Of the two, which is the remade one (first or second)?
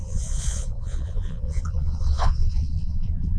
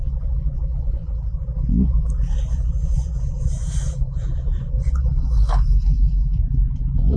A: first